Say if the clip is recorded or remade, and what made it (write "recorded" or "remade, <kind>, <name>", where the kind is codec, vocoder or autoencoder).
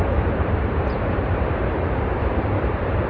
remade, vocoder, BigVGAN v2